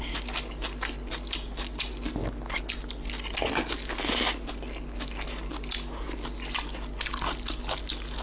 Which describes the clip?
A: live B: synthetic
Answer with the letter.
A